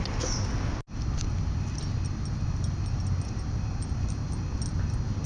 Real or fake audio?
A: real